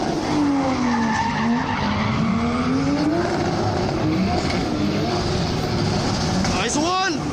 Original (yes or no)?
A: yes